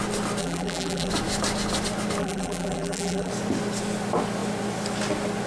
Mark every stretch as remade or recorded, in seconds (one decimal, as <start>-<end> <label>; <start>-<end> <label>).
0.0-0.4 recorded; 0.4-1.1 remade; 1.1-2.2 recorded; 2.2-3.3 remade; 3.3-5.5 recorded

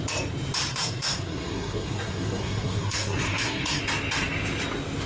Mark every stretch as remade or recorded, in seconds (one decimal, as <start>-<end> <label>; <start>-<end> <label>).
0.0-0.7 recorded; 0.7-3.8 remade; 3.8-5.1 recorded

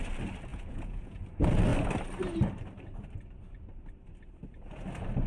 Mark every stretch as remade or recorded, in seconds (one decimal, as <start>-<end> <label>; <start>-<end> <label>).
0.0-0.5 recorded; 0.5-1.2 remade; 1.2-5.3 recorded

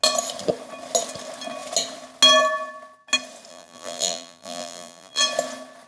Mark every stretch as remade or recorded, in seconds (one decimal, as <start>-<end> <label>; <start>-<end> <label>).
0.0-3.5 recorded; 3.5-5.2 remade; 5.2-5.9 recorded

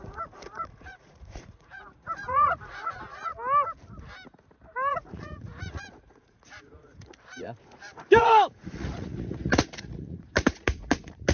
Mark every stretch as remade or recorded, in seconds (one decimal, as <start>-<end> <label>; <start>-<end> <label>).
0.0-3.3 remade; 3.3-4.9 recorded; 4.9-11.3 remade

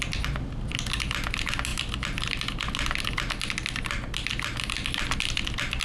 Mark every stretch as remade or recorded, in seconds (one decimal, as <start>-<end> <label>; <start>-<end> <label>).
0.0-5.8 recorded